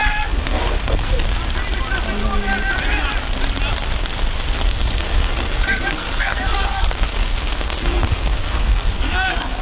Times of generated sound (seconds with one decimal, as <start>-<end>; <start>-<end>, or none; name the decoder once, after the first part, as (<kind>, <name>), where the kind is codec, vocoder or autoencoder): 0.0-1.1 (codec, SNAC); 4.7-9.6

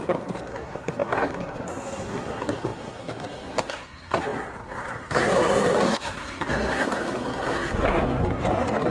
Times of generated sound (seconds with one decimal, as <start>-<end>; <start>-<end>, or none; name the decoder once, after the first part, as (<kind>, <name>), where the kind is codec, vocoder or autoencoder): 0.0-8.9 (codec, SNAC)

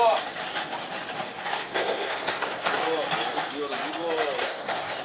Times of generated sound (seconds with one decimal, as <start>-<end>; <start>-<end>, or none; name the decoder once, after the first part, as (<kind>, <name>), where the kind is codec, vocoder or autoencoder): 1.5-2.8 (codec, SNAC); 4.4-5.0

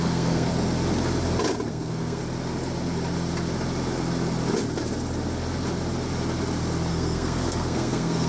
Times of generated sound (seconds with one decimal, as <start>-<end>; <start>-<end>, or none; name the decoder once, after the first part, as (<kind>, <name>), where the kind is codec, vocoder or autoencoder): 0.0-0.5 (codec, SNAC); 1.7-2.2; 6.9-8.3

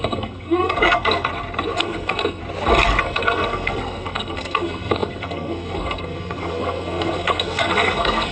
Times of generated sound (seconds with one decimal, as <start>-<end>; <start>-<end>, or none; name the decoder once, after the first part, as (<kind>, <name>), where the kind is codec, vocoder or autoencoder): 0.0-1.3 (codec, SNAC); 1.8-2.4; 3.0-8.3

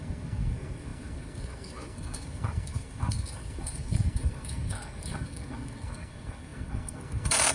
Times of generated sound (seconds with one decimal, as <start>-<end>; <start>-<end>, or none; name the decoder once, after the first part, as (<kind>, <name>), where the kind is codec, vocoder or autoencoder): 0.0-7.5 (codec, SNAC)

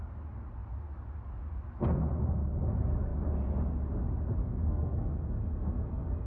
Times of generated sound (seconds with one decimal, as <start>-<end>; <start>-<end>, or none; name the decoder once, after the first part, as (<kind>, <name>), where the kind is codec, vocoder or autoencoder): 4.4-6.3 (codec, SNAC)

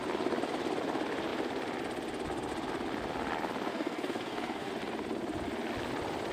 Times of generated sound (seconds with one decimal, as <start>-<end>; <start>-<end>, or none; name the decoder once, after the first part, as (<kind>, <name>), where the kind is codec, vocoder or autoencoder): 3.7-4.7 (codec, SNAC)